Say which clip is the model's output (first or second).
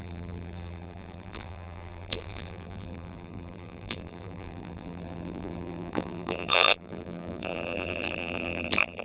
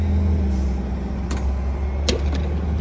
first